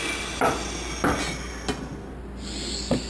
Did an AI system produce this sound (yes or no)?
no